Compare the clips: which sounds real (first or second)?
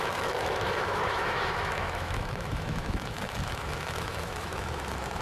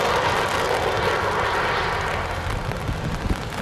second